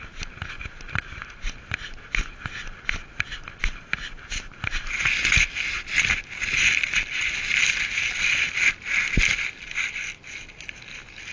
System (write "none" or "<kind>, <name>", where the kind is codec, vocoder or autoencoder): none